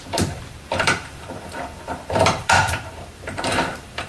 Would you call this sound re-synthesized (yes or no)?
yes